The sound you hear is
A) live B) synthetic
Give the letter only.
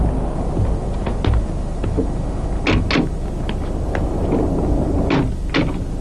A